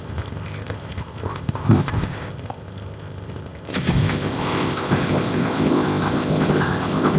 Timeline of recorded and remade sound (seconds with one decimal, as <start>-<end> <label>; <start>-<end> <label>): 0.0-7.2 remade